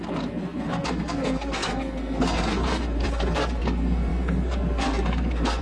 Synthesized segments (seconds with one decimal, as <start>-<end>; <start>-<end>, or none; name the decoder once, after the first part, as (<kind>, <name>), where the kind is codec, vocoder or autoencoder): 0.0-5.6 (codec, SNAC)